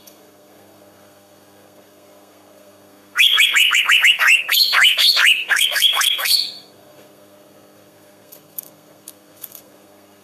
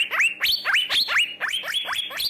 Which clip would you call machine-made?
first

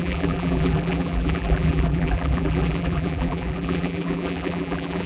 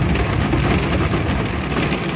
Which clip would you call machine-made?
first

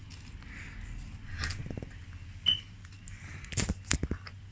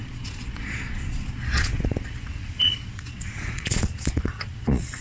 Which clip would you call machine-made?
second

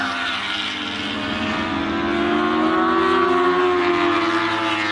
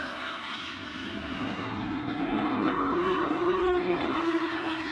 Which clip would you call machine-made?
second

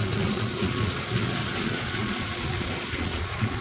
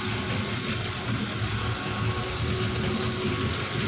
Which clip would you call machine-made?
first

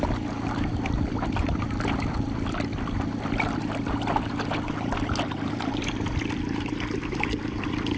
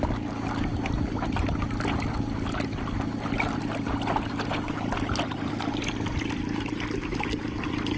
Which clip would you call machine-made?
first